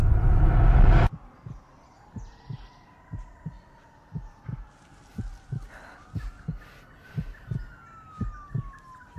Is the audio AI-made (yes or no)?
no